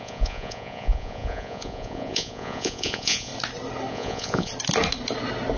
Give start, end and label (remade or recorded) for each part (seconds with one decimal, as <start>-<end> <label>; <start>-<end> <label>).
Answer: 0.0-3.3 remade; 3.3-3.9 recorded; 3.9-4.5 remade; 4.5-5.6 recorded